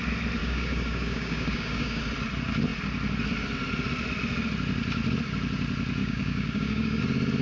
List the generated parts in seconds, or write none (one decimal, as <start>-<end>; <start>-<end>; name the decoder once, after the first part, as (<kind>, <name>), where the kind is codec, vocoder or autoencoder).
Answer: 0.4-2.0 (codec, DAC); 6.0-7.0